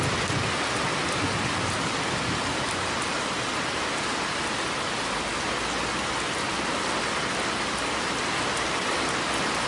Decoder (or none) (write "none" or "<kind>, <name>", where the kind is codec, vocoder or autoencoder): none